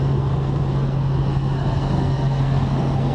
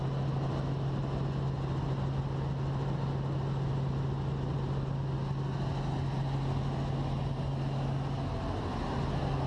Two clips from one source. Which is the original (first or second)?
second